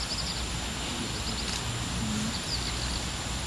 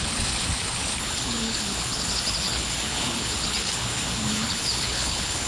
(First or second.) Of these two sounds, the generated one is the second